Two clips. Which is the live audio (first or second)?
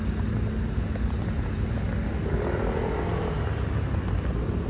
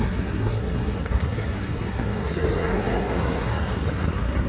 first